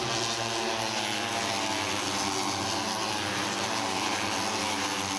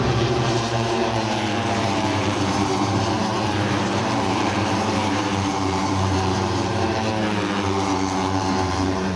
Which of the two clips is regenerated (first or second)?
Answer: second